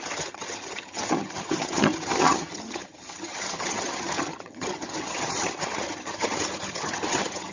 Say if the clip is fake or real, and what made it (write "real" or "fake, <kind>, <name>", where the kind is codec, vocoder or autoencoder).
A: fake, vocoder, HiFi-GAN